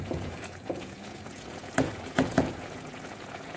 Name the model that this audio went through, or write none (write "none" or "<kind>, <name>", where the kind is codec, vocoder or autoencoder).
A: vocoder, Vocos